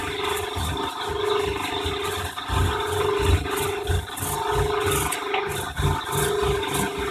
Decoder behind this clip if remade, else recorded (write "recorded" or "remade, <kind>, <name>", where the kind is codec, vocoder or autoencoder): recorded